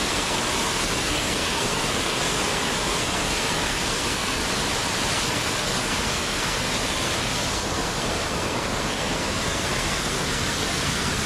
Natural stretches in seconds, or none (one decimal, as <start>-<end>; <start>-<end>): 4.4-5.1